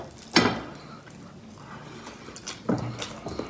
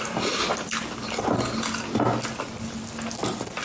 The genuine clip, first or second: second